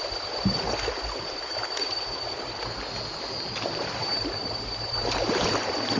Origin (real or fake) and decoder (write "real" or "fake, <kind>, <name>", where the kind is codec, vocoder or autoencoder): fake, vocoder, BigVGAN v2